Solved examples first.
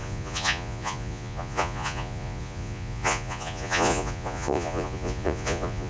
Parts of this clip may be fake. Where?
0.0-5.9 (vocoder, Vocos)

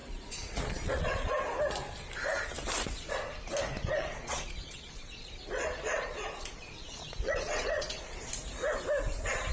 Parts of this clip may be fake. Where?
0.0-1.4 (vocoder, Vocos); 4.0-8.3